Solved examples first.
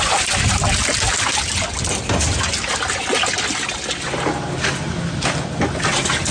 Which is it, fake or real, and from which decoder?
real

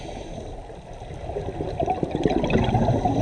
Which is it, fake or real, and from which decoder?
real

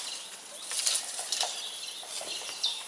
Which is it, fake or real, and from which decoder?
real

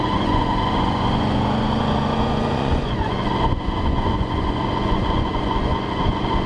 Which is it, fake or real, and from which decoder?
fake, vocoder, Vocos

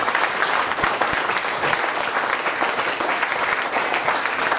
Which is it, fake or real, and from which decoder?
real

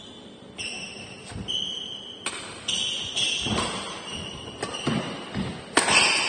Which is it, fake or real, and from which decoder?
real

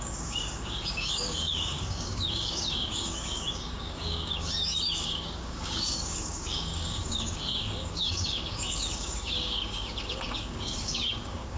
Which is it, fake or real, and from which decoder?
fake, codec, DAC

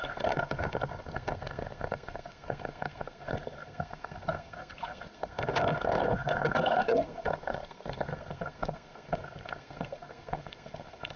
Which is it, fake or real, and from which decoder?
fake, codec, SNAC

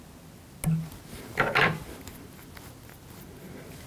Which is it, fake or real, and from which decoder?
real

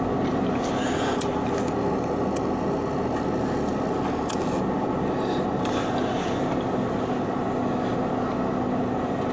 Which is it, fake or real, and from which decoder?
real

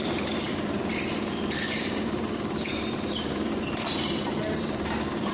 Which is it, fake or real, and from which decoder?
real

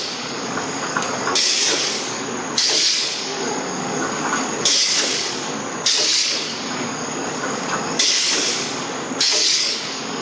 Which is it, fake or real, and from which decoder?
fake, codec, DAC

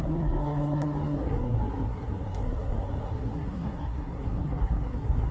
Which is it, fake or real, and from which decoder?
fake, codec, SNAC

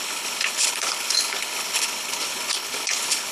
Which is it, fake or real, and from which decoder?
fake, codec, HILCodec